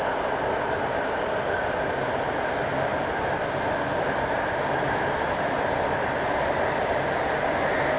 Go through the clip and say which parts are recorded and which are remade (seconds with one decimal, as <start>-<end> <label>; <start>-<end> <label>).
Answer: 0.0-8.0 recorded